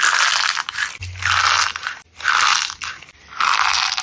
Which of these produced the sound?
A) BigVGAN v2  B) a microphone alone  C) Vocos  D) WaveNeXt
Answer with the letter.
B